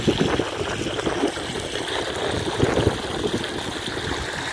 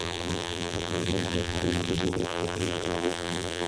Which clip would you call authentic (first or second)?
first